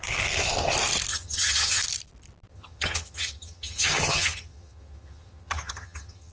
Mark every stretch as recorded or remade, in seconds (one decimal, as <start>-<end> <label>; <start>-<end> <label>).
0.0-1.1 recorded; 1.1-1.8 remade; 1.8-2.5 recorded; 2.5-6.3 remade